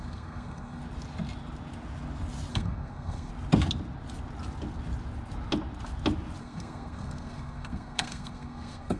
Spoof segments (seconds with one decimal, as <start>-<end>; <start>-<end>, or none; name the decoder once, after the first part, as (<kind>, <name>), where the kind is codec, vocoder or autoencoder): 0.0-0.8 (codec, SNAC); 2.5-3.3; 6.4-9.0